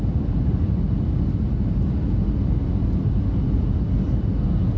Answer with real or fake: real